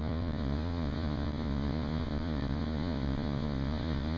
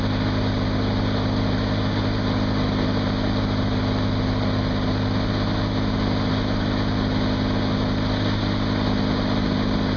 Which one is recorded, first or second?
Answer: second